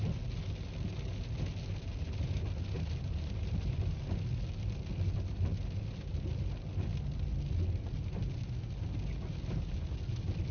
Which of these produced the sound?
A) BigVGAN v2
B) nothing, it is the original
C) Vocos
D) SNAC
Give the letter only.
B